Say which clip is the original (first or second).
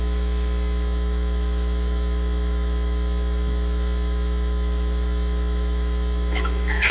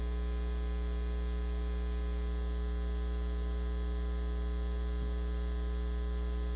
second